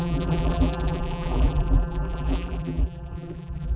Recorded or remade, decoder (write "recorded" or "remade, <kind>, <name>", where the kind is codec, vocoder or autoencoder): remade, vocoder, BigVGAN v2